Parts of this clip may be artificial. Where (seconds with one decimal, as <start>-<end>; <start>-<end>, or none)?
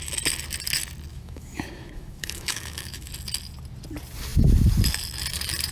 1.1-3.1